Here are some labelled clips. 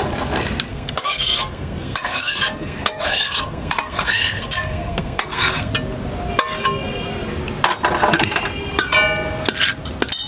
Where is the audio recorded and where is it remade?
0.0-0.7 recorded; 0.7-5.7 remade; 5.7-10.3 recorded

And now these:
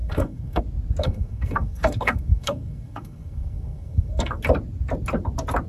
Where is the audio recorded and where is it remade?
0.0-0.6 remade; 0.6-1.0 recorded; 1.0-4.4 remade; 4.4-5.7 recorded